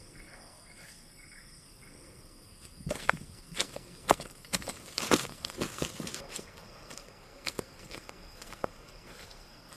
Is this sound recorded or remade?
remade